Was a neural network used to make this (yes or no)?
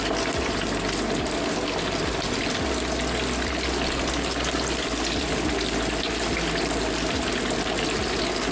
no